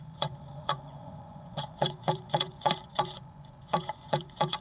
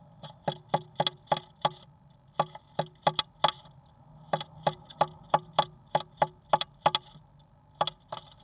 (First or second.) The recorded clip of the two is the second